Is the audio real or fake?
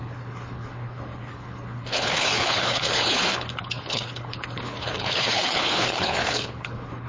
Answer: fake